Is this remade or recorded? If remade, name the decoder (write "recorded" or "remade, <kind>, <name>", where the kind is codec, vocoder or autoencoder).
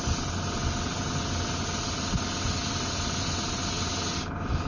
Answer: recorded